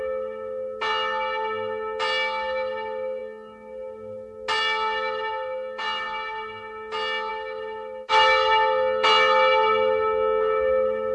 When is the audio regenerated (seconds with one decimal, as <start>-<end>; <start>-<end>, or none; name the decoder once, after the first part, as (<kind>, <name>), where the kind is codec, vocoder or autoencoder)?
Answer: none